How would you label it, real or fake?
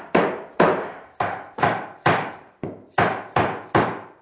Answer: fake